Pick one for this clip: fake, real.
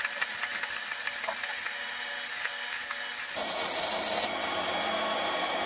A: real